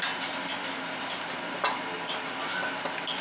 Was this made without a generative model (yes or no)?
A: yes